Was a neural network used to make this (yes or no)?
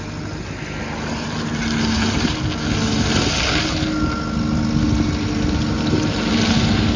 no